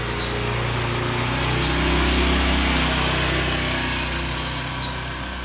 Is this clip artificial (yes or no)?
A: no